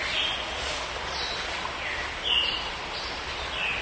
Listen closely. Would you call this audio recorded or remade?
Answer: recorded